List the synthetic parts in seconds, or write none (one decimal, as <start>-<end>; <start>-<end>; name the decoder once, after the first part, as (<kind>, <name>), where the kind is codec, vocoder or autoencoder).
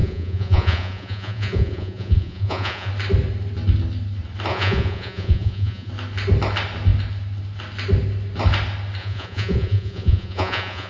0.0-2.9 (vocoder, Vocos); 4.5-5.9; 9.0-10.9